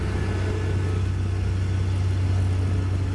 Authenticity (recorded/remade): recorded